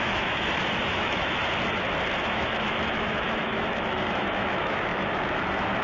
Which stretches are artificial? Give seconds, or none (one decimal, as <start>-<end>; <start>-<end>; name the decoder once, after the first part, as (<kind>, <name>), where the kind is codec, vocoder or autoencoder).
0.0-1.4 (autoencoder, DAC-VAE); 2.2-5.8